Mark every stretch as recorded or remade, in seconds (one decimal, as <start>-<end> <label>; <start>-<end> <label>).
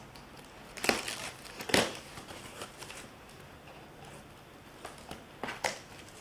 0.0-1.2 recorded; 1.2-3.5 remade; 3.5-6.2 recorded